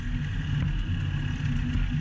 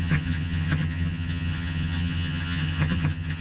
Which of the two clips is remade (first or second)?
second